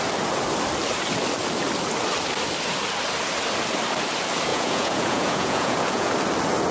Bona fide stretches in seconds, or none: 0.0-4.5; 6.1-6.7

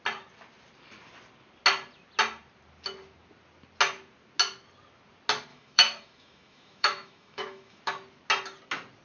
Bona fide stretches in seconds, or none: 0.0-5.5; 7.8-9.0

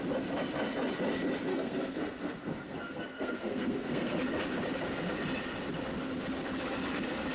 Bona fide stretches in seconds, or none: 0.0-1.5; 4.2-7.3

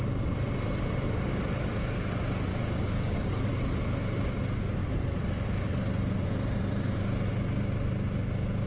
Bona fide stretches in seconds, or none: 0.0-2.5; 3.5-8.7